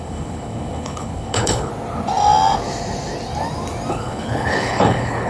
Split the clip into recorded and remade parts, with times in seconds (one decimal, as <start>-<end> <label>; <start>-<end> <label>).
0.0-1.7 remade; 1.7-3.9 recorded; 3.9-5.3 remade